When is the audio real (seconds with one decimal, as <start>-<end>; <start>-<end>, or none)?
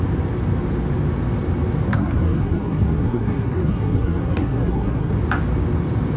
0.0-1.9; 5.1-6.2